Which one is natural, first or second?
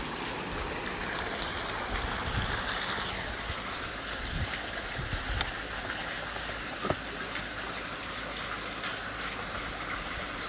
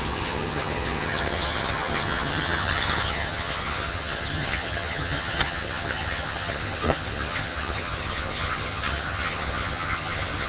first